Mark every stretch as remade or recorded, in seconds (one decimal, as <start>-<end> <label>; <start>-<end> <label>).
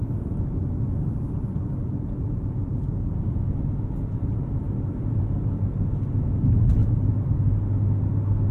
0.0-1.8 recorded; 1.8-4.4 remade; 4.4-8.5 recorded